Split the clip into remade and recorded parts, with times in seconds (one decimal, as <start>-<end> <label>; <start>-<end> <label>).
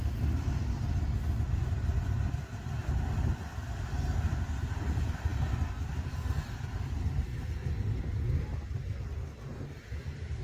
0.0-10.4 recorded